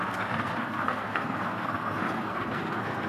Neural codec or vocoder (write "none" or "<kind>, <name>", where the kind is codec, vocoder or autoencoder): codec, SNAC